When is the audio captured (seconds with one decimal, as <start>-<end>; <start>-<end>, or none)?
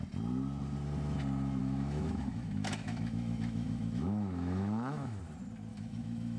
0.0-1.6; 5.2-5.7